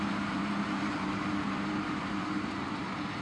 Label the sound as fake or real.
fake